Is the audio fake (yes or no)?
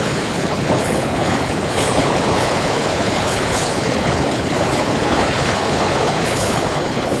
yes